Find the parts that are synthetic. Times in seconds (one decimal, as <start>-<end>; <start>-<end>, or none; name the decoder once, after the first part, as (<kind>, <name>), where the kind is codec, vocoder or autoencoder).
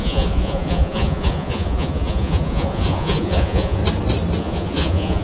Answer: 0.0-3.8 (vocoder, Vocos); 4.4-5.2